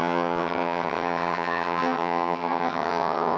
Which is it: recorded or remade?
remade